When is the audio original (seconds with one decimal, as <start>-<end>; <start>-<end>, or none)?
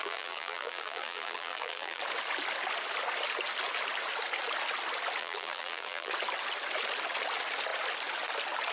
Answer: 2.0-5.2; 6.1-8.7